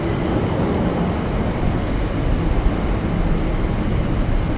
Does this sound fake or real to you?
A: real